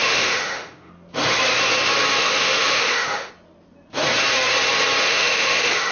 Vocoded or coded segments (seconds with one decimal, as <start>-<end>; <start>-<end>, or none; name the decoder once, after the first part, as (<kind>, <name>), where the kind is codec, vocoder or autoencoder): 0.0-0.9 (autoencoder, DAC-VAE); 2.2-3.3; 5.0-5.9